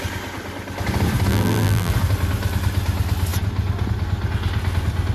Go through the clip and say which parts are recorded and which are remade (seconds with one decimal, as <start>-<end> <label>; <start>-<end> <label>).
0.0-1.3 recorded; 1.3-1.9 remade; 1.9-5.1 recorded